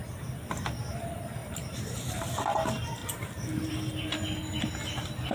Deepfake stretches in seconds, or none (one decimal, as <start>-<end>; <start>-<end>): 3.0-3.7